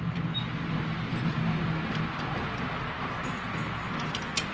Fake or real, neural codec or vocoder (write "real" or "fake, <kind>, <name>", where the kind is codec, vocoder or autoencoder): real